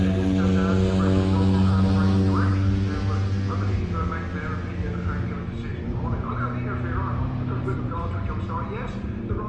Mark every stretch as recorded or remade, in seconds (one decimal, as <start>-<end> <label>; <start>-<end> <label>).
0.0-5.7 recorded; 5.7-6.4 remade; 6.4-7.0 recorded; 7.0-9.5 remade